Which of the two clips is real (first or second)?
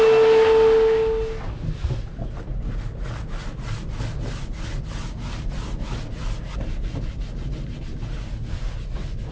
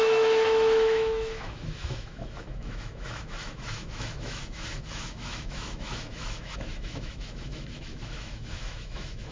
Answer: first